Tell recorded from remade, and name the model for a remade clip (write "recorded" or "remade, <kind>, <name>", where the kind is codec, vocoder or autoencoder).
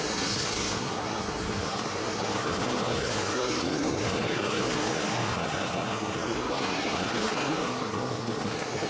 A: remade, codec, SNAC